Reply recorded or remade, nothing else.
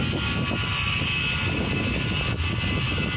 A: recorded